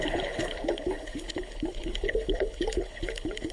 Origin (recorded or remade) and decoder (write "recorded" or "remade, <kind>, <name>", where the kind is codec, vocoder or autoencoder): remade, codec, HILCodec